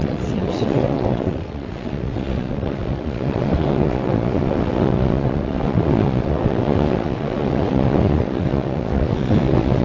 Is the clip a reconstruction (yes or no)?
yes